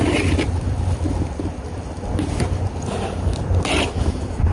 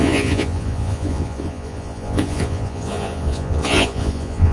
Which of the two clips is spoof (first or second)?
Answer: second